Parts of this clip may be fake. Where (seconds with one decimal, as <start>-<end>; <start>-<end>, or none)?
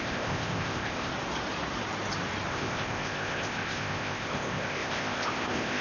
0.0-1.1; 2.5-5.8